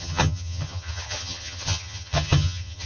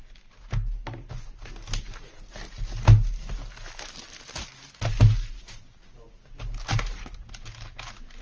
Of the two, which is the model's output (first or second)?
first